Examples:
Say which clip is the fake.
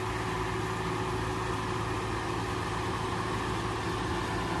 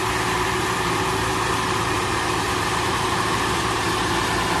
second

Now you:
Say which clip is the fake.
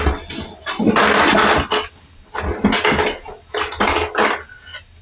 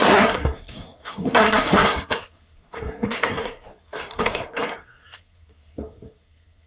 second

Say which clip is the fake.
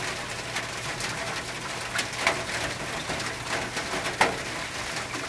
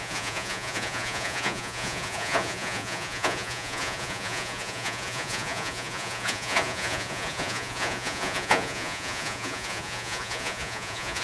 second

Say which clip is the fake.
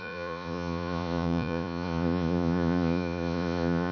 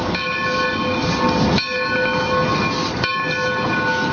first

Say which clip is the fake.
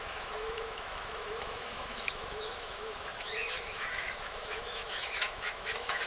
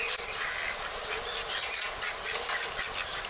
first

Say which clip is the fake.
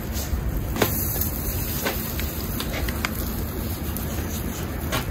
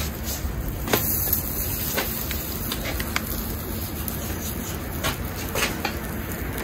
first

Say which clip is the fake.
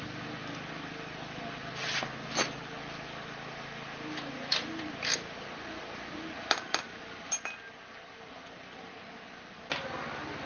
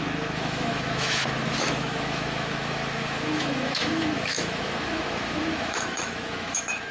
second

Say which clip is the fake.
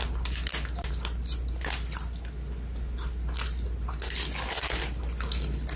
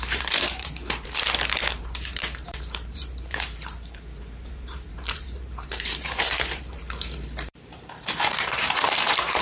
second